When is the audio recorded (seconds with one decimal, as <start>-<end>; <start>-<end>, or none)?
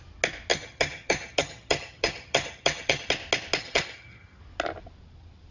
0.0-0.5; 3.1-3.6; 4.4-5.5